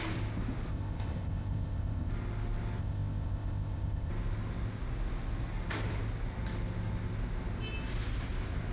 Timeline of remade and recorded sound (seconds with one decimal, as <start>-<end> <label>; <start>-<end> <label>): 0.0-0.7 recorded; 0.7-2.1 remade; 2.1-2.8 recorded; 2.8-4.1 remade; 4.1-8.7 recorded